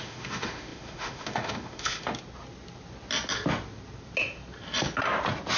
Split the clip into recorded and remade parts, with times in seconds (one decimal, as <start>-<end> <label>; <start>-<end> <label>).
0.0-2.1 remade; 2.1-5.6 recorded

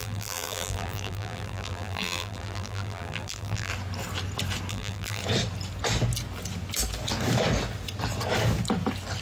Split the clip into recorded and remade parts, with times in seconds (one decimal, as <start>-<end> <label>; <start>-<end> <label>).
0.0-3.7 remade; 3.7-4.7 recorded; 4.7-5.2 remade; 5.2-9.2 recorded